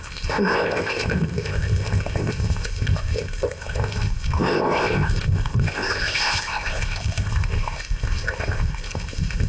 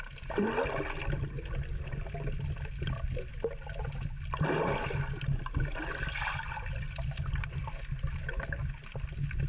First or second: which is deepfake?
first